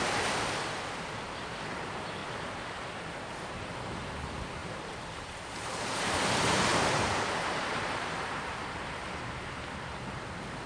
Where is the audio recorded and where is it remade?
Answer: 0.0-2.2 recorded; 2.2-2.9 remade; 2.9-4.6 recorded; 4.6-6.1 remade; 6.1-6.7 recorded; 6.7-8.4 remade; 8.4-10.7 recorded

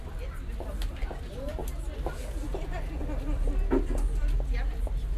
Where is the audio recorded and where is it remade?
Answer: 0.0-1.6 remade; 1.6-3.8 recorded; 3.8-5.2 remade